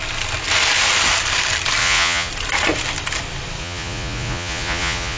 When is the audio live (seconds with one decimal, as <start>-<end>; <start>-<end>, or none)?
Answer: 0.0-1.8; 2.3-3.6